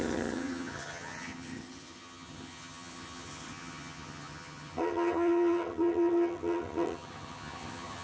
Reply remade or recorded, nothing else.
remade